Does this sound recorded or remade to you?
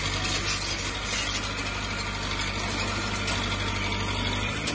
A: recorded